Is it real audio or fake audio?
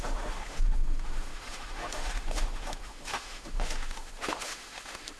fake